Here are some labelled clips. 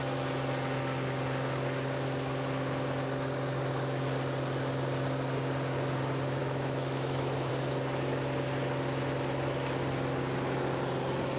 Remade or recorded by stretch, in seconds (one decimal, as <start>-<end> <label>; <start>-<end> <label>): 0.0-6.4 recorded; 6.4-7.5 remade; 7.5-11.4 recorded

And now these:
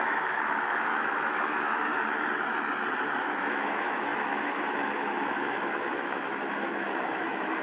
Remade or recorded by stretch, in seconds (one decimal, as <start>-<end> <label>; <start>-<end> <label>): 0.0-1.9 remade; 1.9-3.2 recorded; 3.2-7.6 remade

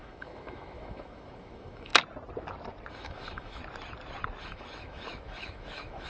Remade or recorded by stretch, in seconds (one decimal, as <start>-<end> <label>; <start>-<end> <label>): 0.0-1.9 remade; 1.9-2.9 recorded; 2.9-3.6 remade; 3.6-4.4 recorded; 4.4-6.1 remade

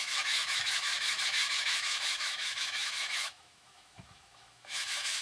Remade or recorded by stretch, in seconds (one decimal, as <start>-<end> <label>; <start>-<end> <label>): 0.0-5.2 remade

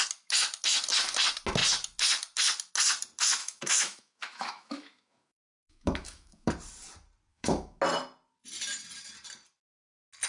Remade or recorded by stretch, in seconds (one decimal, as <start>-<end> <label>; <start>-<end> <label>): 0.0-3.4 recorded; 3.4-6.5 remade; 6.5-7.3 recorded; 7.3-7.8 remade; 7.8-10.3 recorded

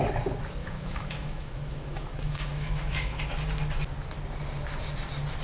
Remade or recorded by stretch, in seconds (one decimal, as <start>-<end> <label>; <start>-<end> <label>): 0.0-0.6 recorded; 0.6-3.2 remade; 3.2-5.4 recorded